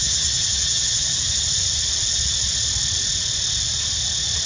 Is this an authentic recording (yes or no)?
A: yes